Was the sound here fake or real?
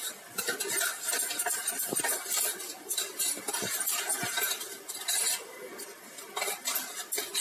real